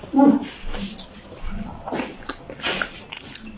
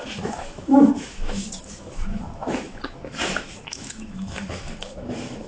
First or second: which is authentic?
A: first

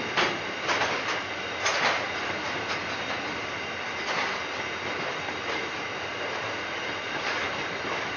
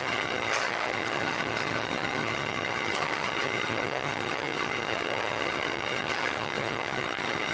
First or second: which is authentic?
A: first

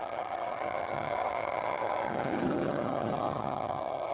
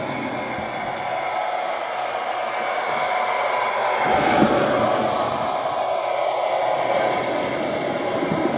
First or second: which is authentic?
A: second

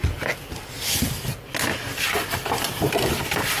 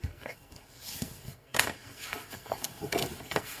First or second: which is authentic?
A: first